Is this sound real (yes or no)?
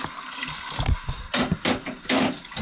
yes